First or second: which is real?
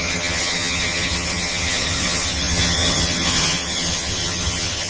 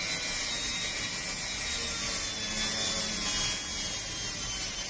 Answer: second